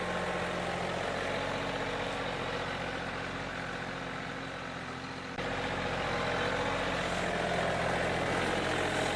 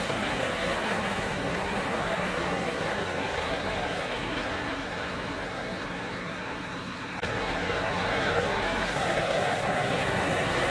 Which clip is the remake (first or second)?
second